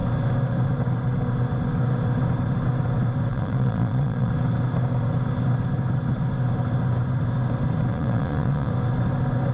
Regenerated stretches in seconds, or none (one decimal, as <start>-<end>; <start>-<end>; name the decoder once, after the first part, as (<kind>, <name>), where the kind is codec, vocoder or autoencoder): 3.3-4.3 (vocoder, Vocos); 7.9-8.7